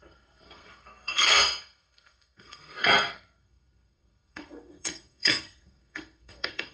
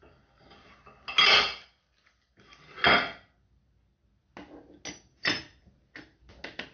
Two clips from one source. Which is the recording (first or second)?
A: second